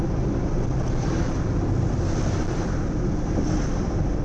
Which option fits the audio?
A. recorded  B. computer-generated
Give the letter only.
A